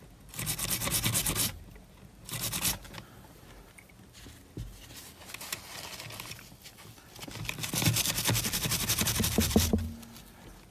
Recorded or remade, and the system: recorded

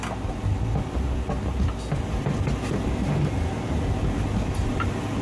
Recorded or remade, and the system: recorded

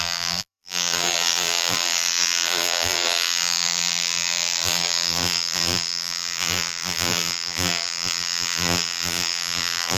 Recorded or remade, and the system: remade, vocoder, BigVGAN v2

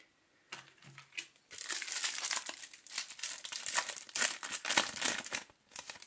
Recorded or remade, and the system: recorded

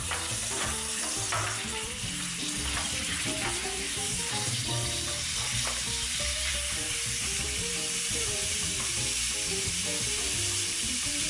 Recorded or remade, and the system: remade, vocoder, BigVGAN v2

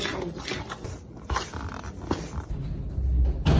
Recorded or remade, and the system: recorded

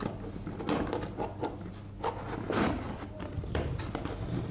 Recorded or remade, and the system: recorded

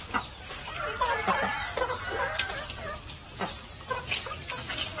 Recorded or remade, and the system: recorded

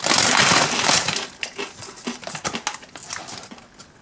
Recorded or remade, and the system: recorded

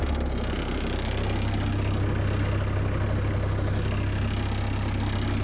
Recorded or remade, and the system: recorded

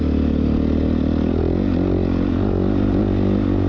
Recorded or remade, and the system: recorded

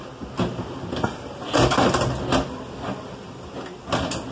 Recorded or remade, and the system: recorded